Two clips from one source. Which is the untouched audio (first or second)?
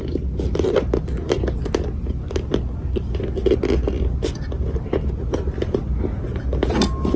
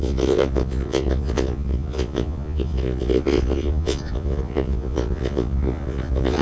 first